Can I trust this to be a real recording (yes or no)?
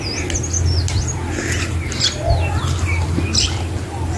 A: yes